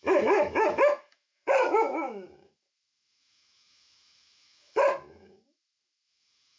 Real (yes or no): no